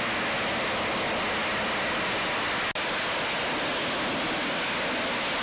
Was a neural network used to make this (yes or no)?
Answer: no